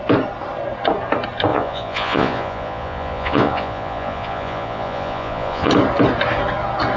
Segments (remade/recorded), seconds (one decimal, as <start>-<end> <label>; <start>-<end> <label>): 0.0-1.5 recorded; 1.5-5.7 remade; 5.7-7.0 recorded

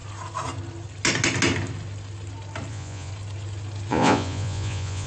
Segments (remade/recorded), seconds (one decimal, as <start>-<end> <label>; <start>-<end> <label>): 0.0-2.7 recorded; 2.7-3.1 remade; 3.1-3.9 recorded; 3.9-5.1 remade

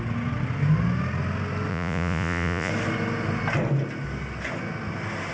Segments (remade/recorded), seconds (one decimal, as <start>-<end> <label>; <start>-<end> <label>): 0.0-1.7 recorded; 1.7-2.7 remade; 2.7-5.3 recorded

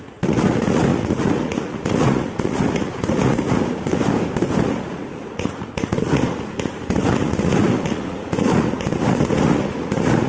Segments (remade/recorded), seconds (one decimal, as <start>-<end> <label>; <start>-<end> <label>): 0.0-3.9 remade; 3.9-4.6 recorded; 4.6-10.3 remade

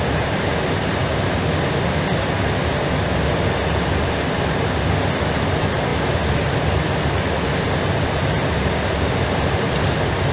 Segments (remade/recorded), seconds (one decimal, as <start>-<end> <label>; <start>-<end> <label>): 0.0-10.3 recorded

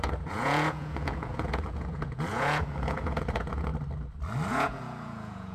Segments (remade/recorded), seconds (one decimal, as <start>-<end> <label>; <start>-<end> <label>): 0.0-3.7 remade; 3.7-4.5 recorded; 4.5-5.5 remade

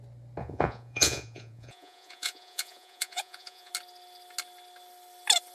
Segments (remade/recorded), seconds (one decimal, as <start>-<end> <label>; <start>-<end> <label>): 0.0-0.4 recorded; 0.4-3.7 remade; 3.7-5.5 recorded

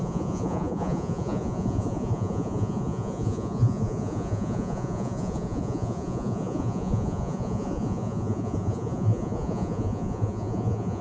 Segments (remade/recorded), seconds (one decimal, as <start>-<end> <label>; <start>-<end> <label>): 0.0-11.0 remade